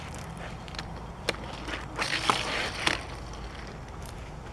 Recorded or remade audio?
recorded